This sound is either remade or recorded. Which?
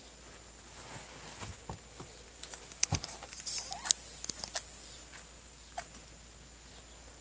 recorded